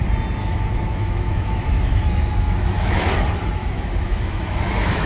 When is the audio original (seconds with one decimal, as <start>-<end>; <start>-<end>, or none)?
0.0-0.4; 3.1-3.6